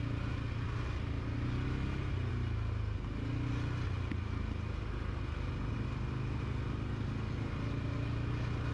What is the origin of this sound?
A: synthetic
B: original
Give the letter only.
B